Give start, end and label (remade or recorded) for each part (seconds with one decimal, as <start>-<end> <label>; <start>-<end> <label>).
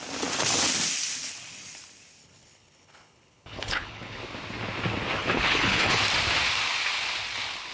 0.0-2.2 recorded; 2.2-4.2 remade; 4.2-5.2 recorded; 5.2-6.0 remade; 6.0-7.7 recorded